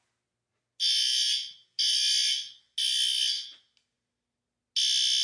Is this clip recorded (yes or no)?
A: yes